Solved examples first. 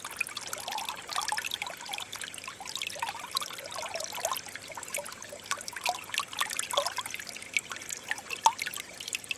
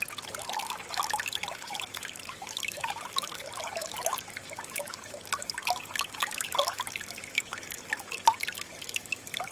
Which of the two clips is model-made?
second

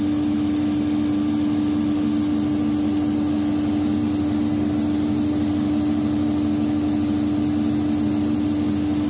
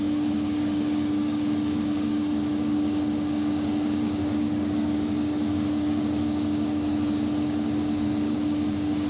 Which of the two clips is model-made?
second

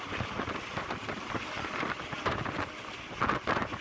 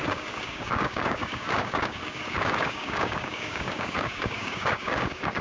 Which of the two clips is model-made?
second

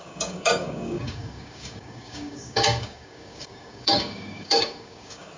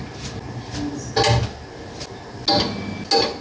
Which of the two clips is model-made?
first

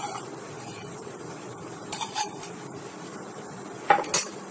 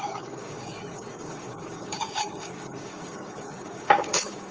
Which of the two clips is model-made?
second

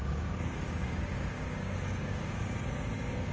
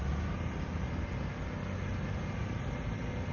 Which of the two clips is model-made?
first